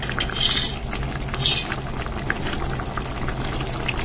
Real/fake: real